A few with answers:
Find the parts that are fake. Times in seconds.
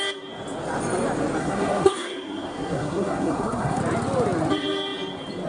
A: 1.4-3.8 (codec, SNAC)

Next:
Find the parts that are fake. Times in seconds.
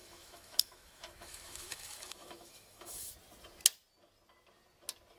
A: 0.0-3.1 (autoencoder, DAC-VAE)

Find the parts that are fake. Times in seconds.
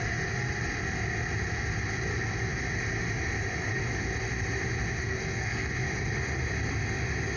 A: 5.0-5.7 (codec, SNAC)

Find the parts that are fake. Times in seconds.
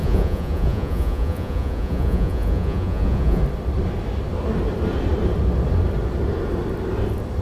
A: 0.0-3.4 (vocoder, Vocos)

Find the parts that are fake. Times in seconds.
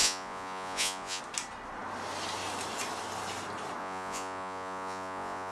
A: 0.0-1.2 (vocoder, Vocos); 3.8-5.5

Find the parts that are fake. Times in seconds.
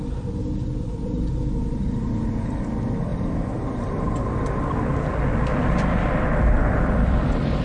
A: 3.1-7.6 (vocoder, BigVGAN v2)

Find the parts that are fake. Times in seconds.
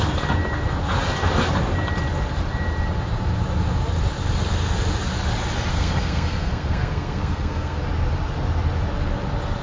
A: 5.7-7.8 (codec, SNAC)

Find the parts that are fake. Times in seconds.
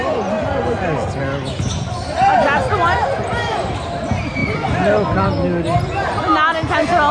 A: none